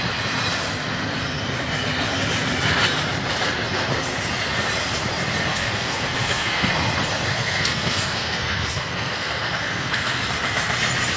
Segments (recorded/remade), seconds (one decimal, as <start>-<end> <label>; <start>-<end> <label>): 0.0-5.5 recorded; 5.5-6.7 remade; 6.7-7.3 recorded; 7.3-10.2 remade; 10.2-11.2 recorded